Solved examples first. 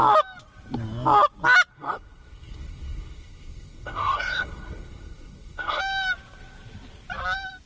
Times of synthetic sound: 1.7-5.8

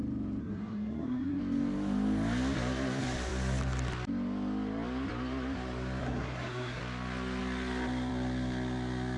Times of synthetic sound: 0.4-1.4; 6.0-6.8

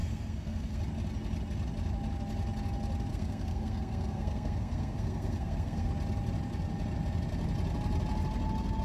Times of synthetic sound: 0.0-0.8; 3.1-5.9

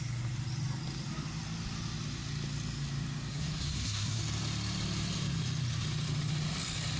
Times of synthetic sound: 3.3-4.2

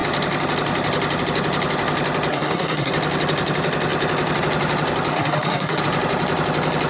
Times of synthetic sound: 2.3-2.9; 5.1-5.8

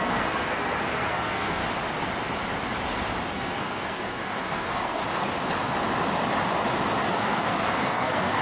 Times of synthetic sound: 0.0-1.6; 3.3-5.0; 7.1-8.4

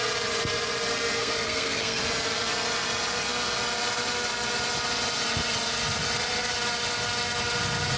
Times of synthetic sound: 1.2-2.0